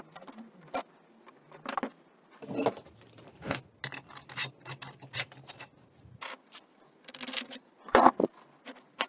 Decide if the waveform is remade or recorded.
recorded